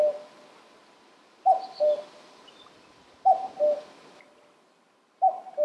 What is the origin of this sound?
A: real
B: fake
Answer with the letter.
A